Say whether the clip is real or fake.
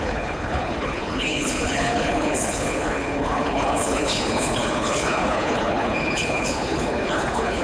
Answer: fake